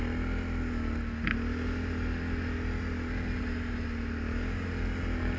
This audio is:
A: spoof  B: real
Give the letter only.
B